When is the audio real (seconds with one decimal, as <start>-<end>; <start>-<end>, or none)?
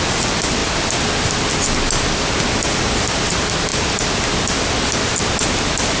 0.0-6.0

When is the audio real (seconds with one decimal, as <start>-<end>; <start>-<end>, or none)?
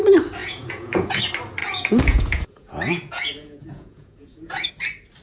0.0-0.4; 1.2-1.6; 4.7-5.2